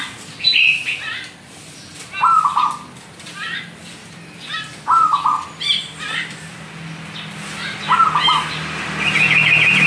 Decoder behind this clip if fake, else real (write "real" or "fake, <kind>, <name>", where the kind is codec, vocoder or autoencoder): real